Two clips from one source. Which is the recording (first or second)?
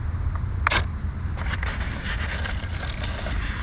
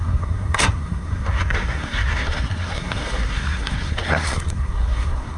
first